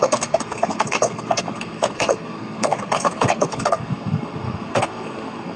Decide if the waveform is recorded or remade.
remade